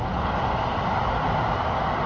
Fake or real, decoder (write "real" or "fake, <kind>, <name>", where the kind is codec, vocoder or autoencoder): real